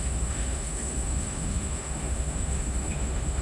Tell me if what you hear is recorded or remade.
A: remade